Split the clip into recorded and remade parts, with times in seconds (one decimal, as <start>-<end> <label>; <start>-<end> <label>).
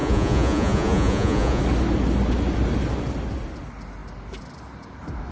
0.0-1.6 remade; 1.6-5.3 recorded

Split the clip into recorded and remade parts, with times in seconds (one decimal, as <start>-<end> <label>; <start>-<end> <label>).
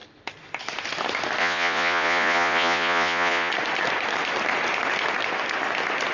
0.0-1.4 recorded; 1.4-3.5 remade; 3.5-6.1 recorded